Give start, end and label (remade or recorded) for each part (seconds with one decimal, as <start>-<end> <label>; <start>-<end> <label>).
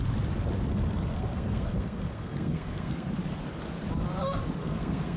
0.0-0.7 recorded; 0.7-3.1 remade; 3.1-4.6 recorded; 4.6-5.2 remade